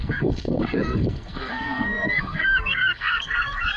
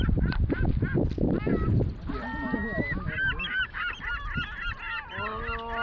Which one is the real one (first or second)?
second